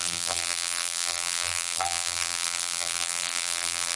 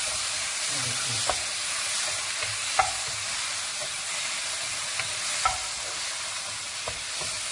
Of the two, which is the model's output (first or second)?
first